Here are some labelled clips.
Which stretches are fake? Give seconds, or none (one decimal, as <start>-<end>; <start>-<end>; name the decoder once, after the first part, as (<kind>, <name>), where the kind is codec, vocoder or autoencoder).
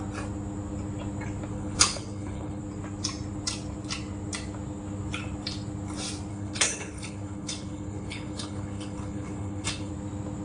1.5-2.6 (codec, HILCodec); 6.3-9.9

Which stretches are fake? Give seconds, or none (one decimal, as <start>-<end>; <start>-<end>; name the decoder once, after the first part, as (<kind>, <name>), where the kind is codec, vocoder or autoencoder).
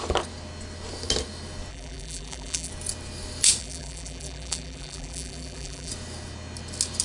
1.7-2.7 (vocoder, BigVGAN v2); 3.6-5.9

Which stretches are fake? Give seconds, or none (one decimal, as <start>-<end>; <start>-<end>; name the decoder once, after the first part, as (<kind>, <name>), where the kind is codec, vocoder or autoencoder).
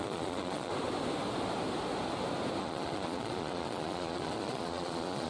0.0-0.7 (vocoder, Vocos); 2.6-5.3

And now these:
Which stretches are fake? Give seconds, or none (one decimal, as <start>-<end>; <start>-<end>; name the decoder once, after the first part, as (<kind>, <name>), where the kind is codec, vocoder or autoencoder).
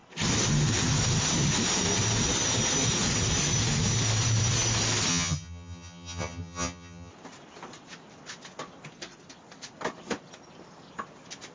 5.1-7.1 (vocoder, HiFi-GAN)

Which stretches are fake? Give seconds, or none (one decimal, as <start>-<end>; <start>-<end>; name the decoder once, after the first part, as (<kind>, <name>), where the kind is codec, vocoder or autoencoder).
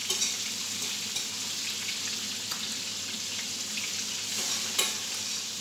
none